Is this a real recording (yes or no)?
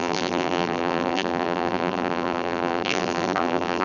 no